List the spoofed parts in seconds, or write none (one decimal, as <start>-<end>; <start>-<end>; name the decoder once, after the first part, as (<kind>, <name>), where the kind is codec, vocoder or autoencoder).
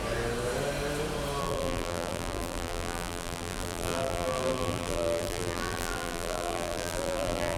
1.4-7.6 (vocoder, BigVGAN v2)